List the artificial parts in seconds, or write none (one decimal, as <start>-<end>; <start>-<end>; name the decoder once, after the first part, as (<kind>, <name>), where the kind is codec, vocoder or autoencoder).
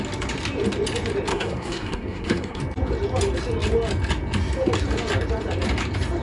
1.3-2.6 (codec, SNAC)